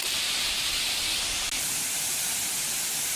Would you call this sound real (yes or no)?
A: yes